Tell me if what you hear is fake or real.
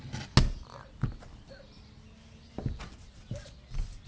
real